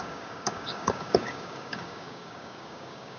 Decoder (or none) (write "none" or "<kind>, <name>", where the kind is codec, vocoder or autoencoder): codec, DAC